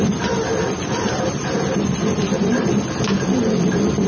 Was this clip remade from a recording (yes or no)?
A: no